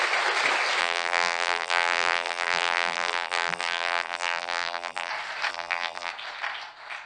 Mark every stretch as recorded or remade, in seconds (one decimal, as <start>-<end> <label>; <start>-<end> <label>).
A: 0.0-0.8 recorded; 0.8-5.1 remade; 5.1-5.5 recorded; 5.5-6.1 remade; 6.1-7.1 recorded